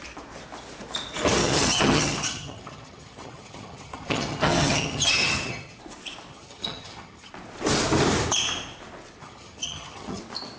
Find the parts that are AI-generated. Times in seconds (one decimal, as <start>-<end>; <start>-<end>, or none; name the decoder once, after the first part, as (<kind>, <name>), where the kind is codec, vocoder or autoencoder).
1.4-5.8 (vocoder, HiFi-GAN); 6.3-7.3; 9.2-10.2